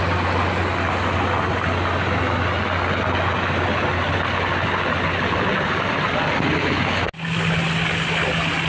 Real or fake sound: real